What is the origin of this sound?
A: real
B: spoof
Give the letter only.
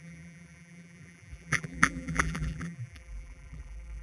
B